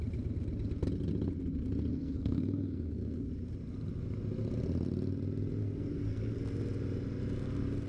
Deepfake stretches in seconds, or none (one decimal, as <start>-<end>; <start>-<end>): 1.9-3.3; 5.6-6.4